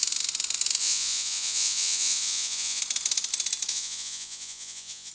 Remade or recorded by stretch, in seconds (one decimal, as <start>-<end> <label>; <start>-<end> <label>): 0.0-0.8 recorded; 0.8-2.8 remade; 2.8-3.7 recorded; 3.7-5.1 remade